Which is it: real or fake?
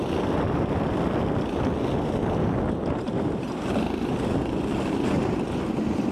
real